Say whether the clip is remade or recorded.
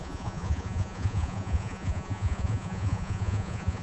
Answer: remade